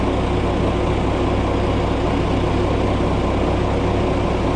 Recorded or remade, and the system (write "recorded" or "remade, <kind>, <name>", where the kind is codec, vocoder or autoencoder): recorded